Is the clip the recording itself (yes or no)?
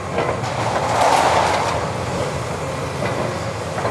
yes